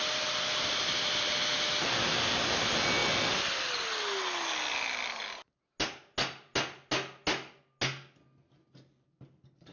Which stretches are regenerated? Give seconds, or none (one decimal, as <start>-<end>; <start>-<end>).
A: none